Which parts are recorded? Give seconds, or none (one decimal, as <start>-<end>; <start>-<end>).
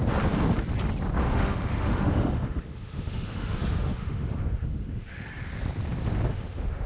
0.0-1.2; 5.3-6.3